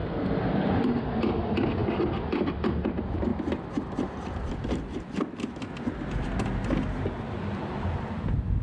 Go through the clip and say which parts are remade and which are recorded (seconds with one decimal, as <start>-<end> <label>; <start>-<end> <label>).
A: 0.0-0.7 remade; 0.7-8.6 recorded